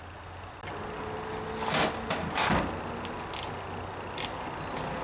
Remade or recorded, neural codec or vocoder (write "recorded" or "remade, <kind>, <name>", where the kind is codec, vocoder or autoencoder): recorded